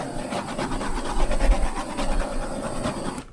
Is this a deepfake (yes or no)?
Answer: no